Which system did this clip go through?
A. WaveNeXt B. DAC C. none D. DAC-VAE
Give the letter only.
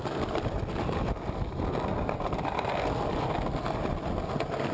C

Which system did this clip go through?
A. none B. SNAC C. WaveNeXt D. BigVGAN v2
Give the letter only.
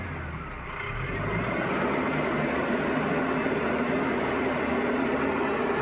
A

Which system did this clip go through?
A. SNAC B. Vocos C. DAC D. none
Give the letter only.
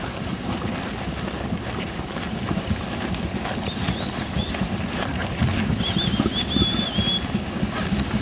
D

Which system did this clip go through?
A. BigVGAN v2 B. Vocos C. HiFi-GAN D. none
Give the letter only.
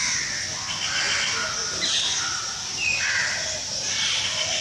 D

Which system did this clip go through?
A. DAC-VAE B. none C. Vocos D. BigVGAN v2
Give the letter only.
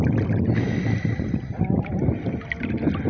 B